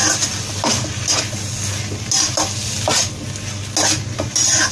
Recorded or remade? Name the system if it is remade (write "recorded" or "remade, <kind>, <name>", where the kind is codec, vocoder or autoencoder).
recorded